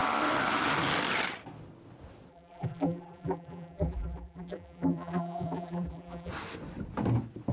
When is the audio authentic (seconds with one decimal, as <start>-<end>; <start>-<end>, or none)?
0.0-2.3; 6.3-7.5